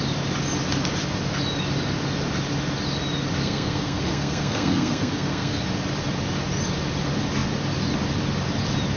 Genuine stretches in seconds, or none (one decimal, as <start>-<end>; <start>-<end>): 0.0-3.4; 5.6-9.0